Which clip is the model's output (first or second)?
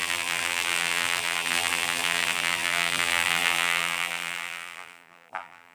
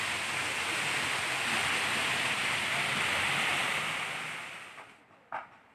first